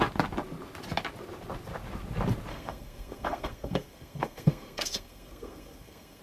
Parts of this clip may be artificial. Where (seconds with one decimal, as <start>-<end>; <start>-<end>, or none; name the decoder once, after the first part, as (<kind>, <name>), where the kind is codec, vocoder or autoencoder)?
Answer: 2.5-6.2 (codec, SNAC)